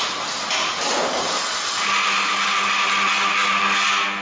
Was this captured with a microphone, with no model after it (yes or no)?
yes